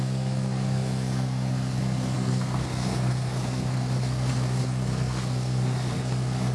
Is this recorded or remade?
remade